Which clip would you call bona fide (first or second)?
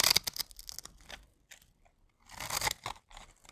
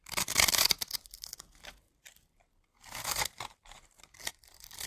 first